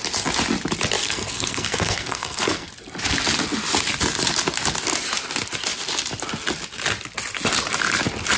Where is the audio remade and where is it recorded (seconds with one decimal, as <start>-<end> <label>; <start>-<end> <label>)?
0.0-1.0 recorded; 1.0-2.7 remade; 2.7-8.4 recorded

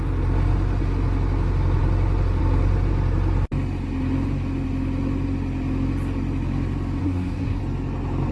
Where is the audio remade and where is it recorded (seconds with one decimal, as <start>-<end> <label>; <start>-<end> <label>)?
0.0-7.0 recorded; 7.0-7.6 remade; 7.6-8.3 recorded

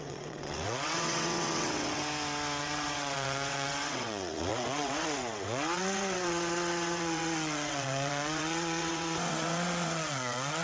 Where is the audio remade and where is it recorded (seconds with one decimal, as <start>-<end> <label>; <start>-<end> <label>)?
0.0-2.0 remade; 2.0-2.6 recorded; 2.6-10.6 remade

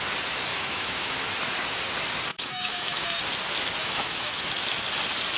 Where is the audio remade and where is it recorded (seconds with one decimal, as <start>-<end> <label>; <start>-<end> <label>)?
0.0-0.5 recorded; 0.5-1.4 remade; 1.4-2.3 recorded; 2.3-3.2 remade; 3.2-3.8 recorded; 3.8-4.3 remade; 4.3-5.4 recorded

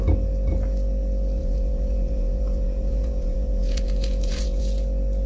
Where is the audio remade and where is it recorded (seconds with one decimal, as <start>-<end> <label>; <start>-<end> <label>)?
0.0-1.4 recorded; 1.4-4.6 remade; 4.6-5.3 recorded

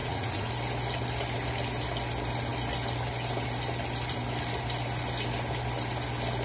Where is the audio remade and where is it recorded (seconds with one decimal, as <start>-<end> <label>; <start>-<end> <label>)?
0.0-0.5 remade; 0.5-6.4 recorded